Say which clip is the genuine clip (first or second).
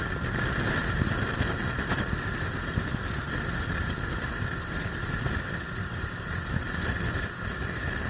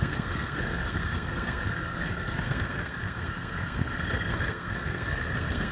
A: first